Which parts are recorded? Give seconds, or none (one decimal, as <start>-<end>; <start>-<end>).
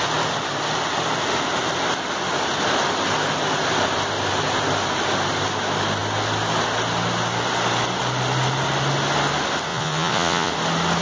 0.0-9.7; 10.5-11.0